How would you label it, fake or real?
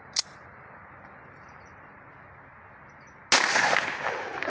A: real